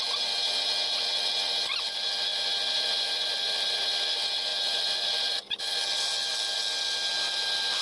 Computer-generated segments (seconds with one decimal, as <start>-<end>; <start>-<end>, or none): none